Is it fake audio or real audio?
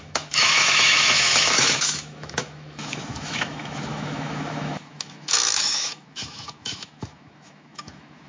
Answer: fake